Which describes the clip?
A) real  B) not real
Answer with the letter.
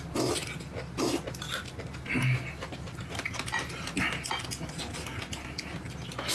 A